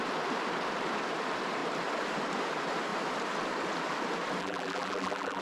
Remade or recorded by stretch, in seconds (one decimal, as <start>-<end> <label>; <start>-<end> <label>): 0.0-4.4 recorded; 4.4-5.4 remade